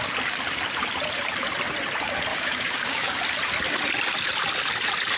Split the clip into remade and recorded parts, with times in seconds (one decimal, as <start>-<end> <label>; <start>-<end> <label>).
0.0-2.3 recorded; 2.3-3.2 remade; 3.2-5.2 recorded